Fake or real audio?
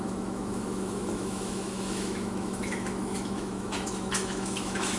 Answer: fake